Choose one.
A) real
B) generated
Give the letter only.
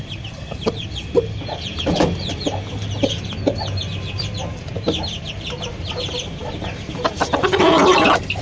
A